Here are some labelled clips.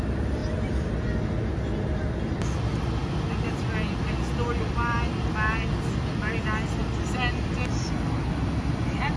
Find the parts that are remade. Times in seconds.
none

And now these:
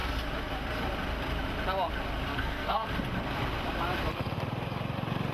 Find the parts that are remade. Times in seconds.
2.3-2.9 (codec, SNAC)

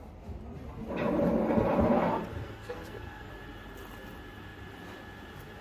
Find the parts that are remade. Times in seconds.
2.3-3.3 (codec, SNAC)

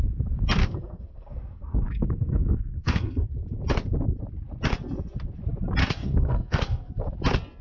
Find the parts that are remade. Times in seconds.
0.6-3.3 (codec, SNAC); 5.8-6.9

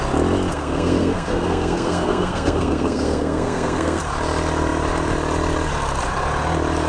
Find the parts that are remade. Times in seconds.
0.5-4.0 (codec, SNAC)

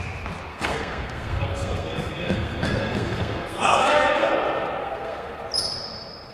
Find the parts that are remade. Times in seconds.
0.5-4.3 (codec, SNAC); 4.8-5.4

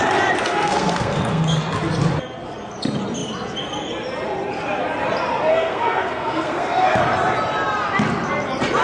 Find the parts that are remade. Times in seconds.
0.4-1.6 (codec, SNAC); 5.5-7.0

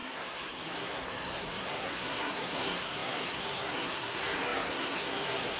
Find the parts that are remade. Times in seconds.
0.0-5.6 (codec, SNAC)